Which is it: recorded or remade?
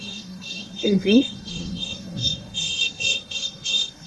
remade